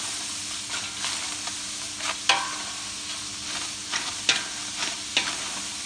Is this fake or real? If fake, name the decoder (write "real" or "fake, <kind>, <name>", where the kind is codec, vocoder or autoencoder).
real